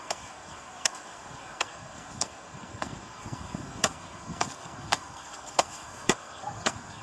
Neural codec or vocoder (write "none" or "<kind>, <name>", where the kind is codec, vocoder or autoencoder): codec, SNAC